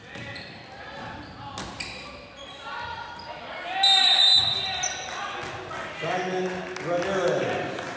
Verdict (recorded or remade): recorded